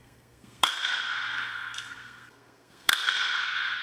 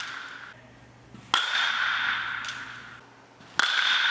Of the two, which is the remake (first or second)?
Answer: first